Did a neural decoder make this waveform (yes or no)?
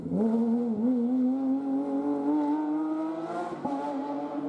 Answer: no